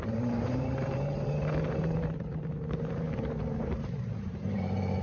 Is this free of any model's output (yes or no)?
no